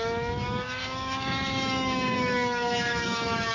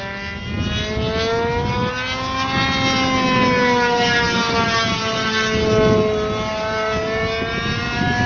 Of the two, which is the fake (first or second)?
first